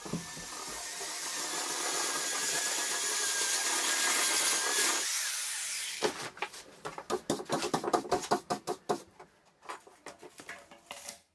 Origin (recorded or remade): recorded